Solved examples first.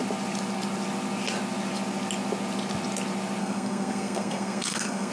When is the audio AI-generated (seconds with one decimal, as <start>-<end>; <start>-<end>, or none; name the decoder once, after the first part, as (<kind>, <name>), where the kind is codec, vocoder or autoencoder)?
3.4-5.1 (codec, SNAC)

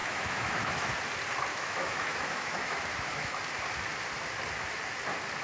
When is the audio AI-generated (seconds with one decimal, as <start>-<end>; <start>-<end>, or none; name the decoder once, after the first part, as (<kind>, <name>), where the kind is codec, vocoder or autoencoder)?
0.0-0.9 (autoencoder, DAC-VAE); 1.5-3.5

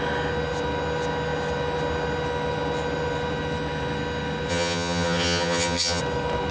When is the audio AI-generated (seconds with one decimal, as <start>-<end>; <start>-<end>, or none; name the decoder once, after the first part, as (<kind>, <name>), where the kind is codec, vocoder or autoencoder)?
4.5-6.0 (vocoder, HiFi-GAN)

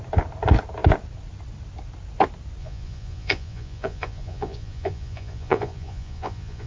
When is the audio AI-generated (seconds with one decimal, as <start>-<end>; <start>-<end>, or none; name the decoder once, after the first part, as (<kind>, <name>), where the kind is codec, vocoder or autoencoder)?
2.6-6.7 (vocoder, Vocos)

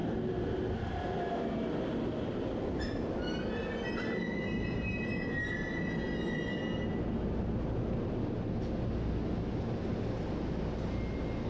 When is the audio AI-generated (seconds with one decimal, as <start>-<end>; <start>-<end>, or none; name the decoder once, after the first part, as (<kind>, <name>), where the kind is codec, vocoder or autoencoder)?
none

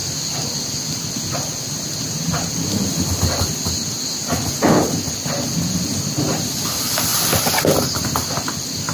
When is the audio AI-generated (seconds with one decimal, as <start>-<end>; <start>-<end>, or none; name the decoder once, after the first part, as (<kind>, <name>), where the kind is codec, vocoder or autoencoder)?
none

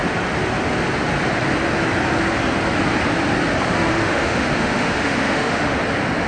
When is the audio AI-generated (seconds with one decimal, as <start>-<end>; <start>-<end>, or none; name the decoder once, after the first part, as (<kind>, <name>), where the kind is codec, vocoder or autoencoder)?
3.9-5.8 (autoencoder, DAC-VAE)

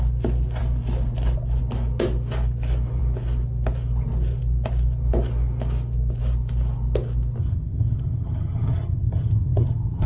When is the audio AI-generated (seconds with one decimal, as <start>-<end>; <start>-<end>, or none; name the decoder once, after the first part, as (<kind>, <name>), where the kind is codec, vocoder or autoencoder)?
7.4-10.1 (vocoder, HiFi-GAN)